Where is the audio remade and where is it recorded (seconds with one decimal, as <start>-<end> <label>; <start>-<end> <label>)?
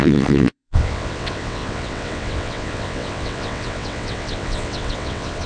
0.0-5.5 remade